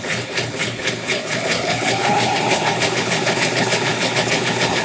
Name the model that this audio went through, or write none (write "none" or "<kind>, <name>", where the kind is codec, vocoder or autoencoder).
codec, HILCodec